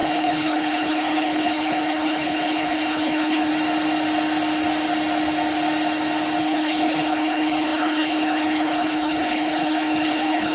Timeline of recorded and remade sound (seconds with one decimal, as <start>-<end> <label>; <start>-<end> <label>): 0.0-3.5 remade; 3.5-6.4 recorded; 6.4-10.5 remade